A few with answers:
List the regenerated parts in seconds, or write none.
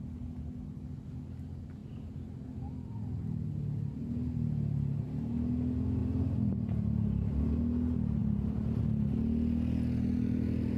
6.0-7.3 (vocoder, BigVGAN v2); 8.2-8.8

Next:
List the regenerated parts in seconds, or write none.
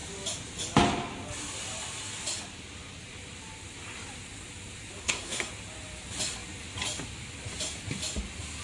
5.0-5.5 (codec, SNAC)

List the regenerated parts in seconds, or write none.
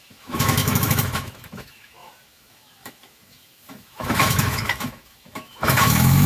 0.0-6.3 (autoencoder, DAC-VAE)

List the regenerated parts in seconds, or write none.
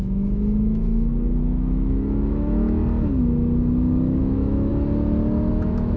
0.0-2.8 (autoencoder, DAC-VAE); 4.2-4.7; 5.5-6.0